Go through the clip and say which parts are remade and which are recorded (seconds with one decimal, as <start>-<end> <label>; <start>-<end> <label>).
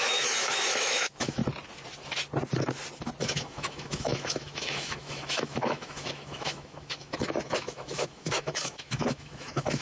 0.0-1.4 remade; 1.4-3.2 recorded; 3.2-9.8 remade